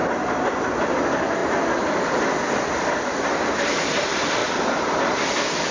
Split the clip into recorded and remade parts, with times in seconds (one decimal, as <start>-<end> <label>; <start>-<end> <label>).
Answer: 0.0-0.9 recorded; 0.9-1.4 remade; 1.4-2.6 recorded; 2.6-5.7 remade